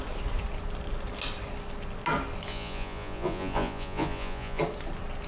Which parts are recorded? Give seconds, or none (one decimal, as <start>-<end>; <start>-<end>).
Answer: 0.0-2.5; 4.6-5.3